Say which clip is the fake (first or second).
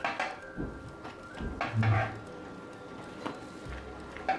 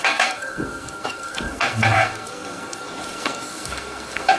second